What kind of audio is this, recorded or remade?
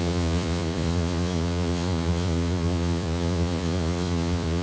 remade